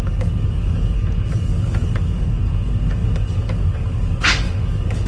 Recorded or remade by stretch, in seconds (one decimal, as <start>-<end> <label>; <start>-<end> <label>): 0.0-5.1 remade